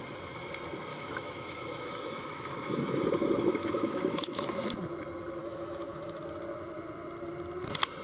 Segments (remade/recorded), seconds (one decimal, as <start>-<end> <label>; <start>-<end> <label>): 0.0-0.9 recorded; 0.9-3.1 remade; 3.1-3.6 recorded; 3.6-4.5 remade; 4.5-5.4 recorded; 5.4-6.2 remade; 6.2-8.0 recorded